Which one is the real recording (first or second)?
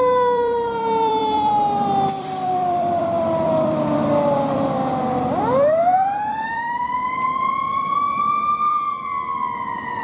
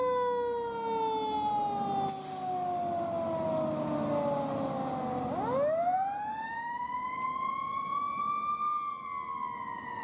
second